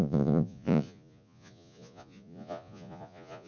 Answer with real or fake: fake